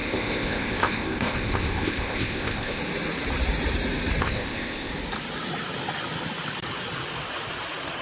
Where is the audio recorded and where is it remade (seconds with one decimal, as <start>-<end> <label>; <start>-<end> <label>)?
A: 0.0-2.8 remade; 2.8-4.2 recorded; 4.2-4.9 remade; 4.9-8.0 recorded